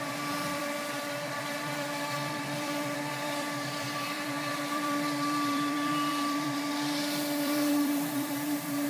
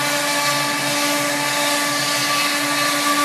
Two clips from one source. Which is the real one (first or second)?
second